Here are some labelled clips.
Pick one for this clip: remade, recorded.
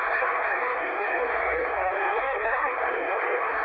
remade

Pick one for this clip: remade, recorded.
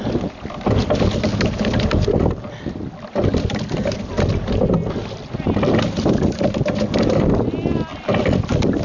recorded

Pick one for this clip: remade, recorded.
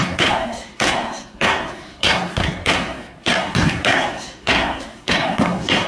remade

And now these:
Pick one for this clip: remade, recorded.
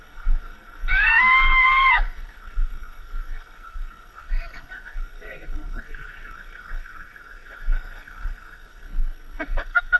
remade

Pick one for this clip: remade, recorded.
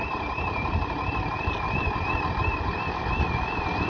recorded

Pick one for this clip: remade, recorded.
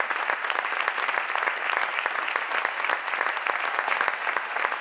recorded